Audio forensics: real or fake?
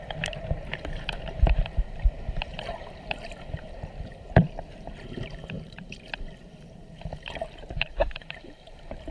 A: fake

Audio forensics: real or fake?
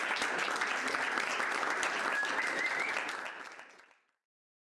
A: real